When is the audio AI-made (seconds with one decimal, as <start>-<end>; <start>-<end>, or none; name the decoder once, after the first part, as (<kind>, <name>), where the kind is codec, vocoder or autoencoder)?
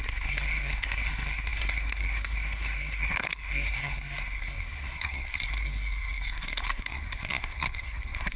0.0-8.4 (codec, SNAC)